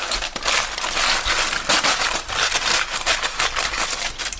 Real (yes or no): yes